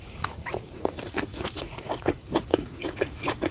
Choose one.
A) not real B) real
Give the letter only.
A